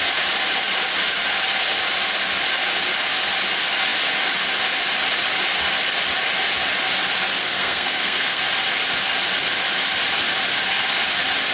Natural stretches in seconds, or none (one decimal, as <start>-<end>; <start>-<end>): 0.0-7.4; 8.4-11.5